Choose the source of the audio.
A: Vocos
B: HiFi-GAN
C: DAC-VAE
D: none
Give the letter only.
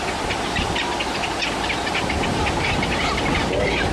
D